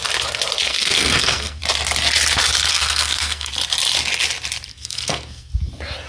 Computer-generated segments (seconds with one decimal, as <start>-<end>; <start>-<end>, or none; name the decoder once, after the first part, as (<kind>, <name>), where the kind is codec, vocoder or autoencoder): 0.7-1.6 (codec, SNAC); 2.7-3.5; 4.7-5.5